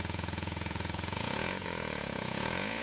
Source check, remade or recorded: remade